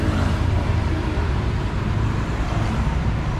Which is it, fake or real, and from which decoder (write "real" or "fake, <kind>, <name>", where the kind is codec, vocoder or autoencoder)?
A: fake, vocoder, BigVGAN v2